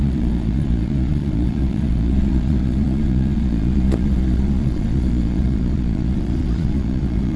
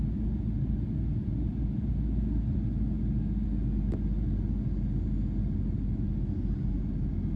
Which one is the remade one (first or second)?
first